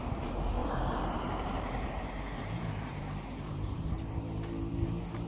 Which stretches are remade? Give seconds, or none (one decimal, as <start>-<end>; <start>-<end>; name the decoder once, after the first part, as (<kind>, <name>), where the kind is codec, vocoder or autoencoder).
0.6-3.8 (vocoder, BigVGAN v2)